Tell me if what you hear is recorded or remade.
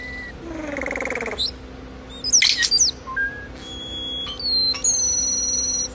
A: recorded